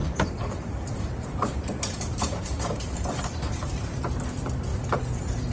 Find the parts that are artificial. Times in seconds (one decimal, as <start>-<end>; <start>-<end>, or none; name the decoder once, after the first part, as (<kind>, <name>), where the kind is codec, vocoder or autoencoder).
0.0-3.3 (vocoder, BigVGAN v2); 4.7-5.5